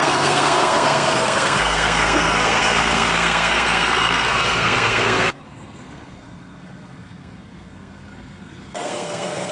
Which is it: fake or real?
fake